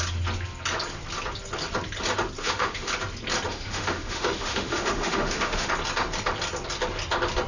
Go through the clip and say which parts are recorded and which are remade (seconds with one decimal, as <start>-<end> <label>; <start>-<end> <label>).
0.0-2.4 recorded; 2.4-2.9 remade; 2.9-3.5 recorded; 3.5-5.7 remade; 5.7-7.5 recorded

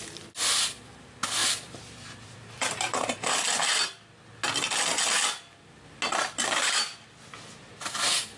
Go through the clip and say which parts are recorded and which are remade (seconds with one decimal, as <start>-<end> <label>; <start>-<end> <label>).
0.0-1.4 recorded; 1.4-3.3 remade; 3.3-8.4 recorded

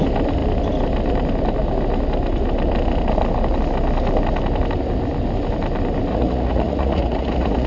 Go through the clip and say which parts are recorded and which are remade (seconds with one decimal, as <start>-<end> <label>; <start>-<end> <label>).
0.0-6.1 recorded; 6.1-7.7 remade

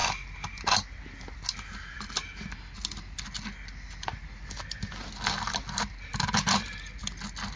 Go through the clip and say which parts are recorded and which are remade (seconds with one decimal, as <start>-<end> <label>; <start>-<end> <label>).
0.0-7.6 recorded

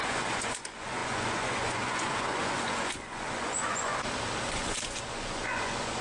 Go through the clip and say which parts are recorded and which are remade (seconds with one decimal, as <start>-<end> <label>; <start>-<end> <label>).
0.0-3.9 remade; 3.9-4.5 recorded; 4.5-6.0 remade

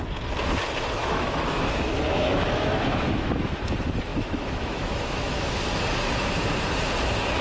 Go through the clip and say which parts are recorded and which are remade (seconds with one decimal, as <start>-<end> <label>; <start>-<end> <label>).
0.0-1.0 recorded; 1.0-3.6 remade; 3.6-4.1 recorded; 4.1-5.5 remade; 5.5-7.4 recorded

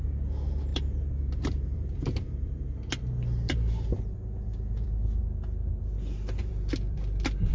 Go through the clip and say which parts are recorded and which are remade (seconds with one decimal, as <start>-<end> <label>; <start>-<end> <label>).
0.0-0.7 recorded; 0.7-5.2 remade; 5.2-6.4 recorded; 6.4-7.5 remade

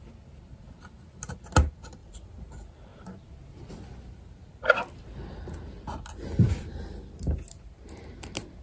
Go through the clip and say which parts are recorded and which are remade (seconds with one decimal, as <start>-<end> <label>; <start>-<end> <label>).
0.0-2.0 recorded; 2.0-2.5 remade; 2.5-8.6 recorded